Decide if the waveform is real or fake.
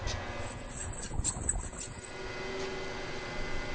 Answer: real